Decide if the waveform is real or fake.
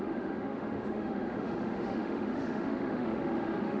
fake